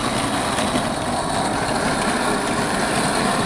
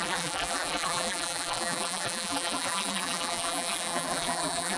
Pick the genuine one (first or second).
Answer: first